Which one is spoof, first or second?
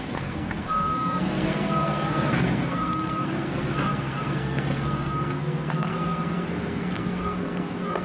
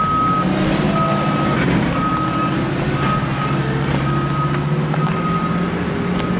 first